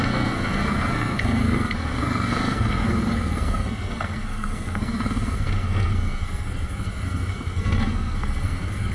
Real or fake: fake